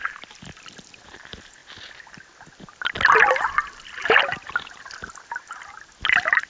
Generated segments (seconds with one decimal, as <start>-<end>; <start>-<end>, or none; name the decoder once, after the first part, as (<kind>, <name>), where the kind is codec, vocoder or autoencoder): none